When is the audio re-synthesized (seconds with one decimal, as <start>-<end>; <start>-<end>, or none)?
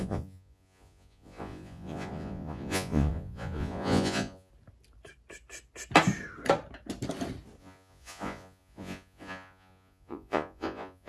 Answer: 0.0-4.5; 7.6-11.1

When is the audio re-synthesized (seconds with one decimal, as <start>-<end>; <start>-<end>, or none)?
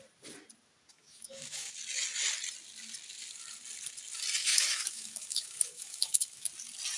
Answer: 0.9-1.7; 4.4-6.5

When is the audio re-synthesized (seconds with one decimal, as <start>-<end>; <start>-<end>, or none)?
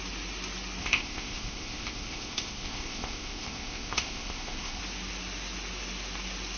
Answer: 0.8-4.8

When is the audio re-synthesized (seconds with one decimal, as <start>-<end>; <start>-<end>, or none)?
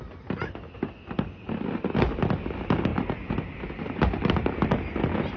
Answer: 2.9-4.5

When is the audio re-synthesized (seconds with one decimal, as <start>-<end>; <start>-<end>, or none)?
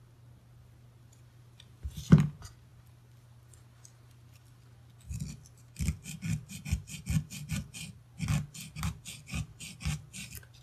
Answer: none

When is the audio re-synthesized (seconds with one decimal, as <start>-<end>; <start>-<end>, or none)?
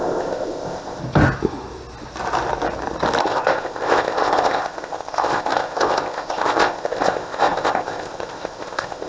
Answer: 0.0-1.0; 3.2-9.1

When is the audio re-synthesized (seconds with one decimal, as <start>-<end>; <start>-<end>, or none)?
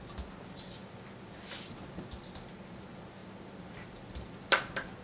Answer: none